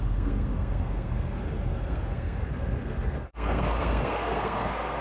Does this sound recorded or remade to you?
remade